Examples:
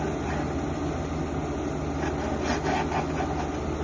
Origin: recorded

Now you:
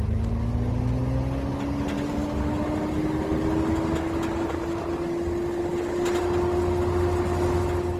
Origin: recorded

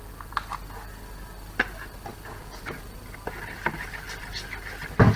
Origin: recorded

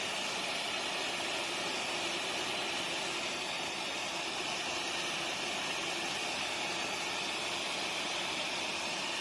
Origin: recorded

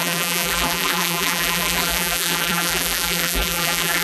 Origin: remade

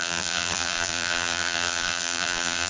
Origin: remade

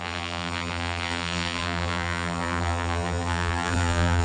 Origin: remade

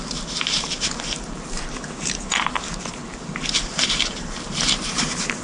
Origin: remade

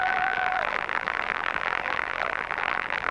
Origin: remade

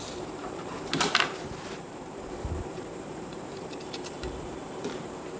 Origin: remade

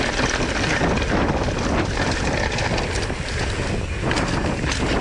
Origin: recorded